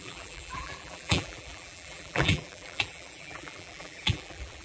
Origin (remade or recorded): remade